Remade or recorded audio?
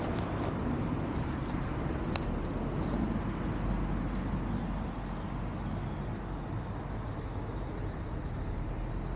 recorded